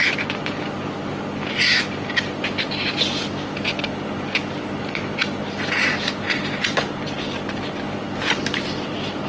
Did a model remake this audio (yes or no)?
no